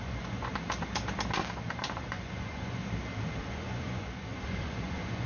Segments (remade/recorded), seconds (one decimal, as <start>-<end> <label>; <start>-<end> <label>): 0.0-0.5 remade; 0.5-1.7 recorded; 1.7-2.8 remade; 2.8-3.4 recorded; 3.4-5.3 remade